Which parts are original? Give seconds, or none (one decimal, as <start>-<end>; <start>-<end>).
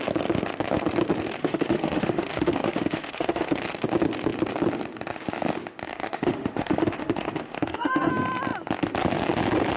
0.0-1.4; 3.6-5.9; 8.1-9.8